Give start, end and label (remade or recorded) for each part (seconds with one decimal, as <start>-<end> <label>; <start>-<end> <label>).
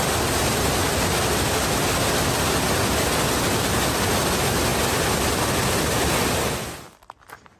0.0-7.6 recorded